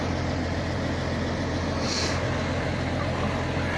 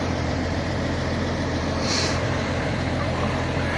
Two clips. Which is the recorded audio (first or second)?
first